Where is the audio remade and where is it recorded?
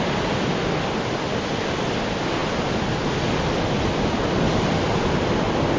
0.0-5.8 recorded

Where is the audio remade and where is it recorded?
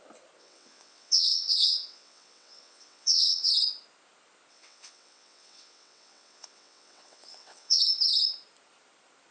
0.0-0.4 recorded; 0.4-3.5 remade; 3.5-4.5 recorded; 4.5-7.8 remade; 7.8-9.3 recorded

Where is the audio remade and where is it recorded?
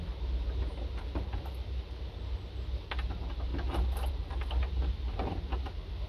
0.0-6.1 recorded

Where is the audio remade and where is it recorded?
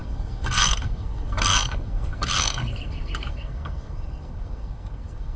0.0-5.4 remade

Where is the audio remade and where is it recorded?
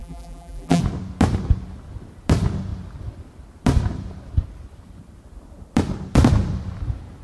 0.0-0.8 remade; 0.8-7.2 recorded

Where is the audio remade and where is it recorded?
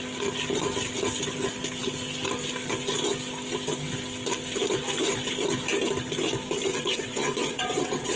0.0-6.7 recorded; 6.7-8.2 remade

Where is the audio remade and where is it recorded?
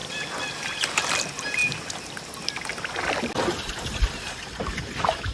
0.0-5.3 recorded